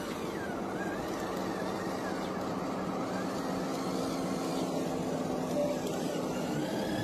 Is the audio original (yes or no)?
yes